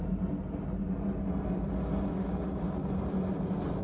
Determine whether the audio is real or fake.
real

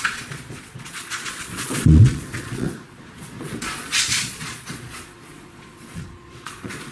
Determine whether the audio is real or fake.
fake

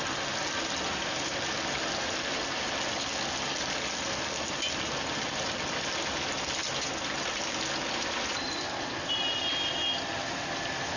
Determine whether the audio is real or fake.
real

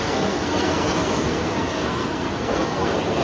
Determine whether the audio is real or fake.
fake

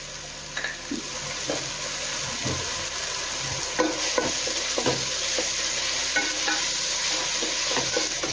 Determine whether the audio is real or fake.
real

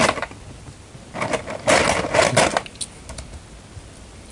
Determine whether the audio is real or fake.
real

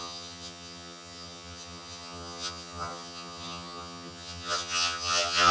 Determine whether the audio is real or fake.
fake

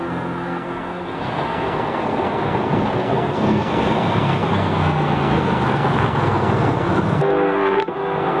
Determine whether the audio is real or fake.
fake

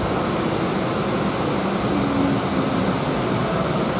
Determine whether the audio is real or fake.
real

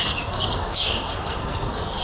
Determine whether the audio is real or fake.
fake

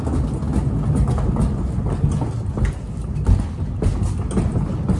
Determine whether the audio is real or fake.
real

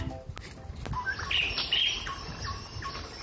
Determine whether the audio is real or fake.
real